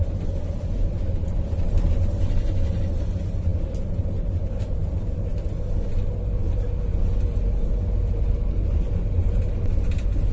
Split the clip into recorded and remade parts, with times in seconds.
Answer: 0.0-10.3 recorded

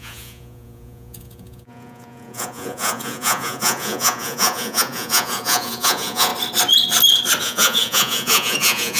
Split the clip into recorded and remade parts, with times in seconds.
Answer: 0.0-6.3 remade; 6.3-7.4 recorded; 7.4-9.0 remade

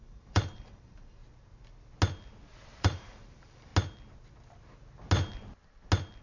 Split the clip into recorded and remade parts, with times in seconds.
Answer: 0.0-1.2 remade; 1.2-2.8 recorded; 2.8-3.7 remade; 3.7-6.2 recorded